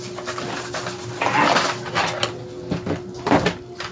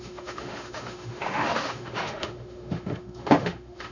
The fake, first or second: second